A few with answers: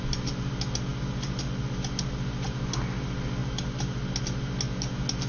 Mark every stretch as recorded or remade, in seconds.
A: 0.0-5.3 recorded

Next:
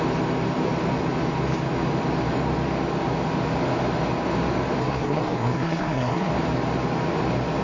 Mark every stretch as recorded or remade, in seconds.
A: 0.0-4.8 recorded; 4.8-6.3 remade; 6.3-7.6 recorded